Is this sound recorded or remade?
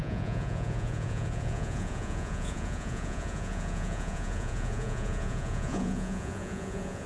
remade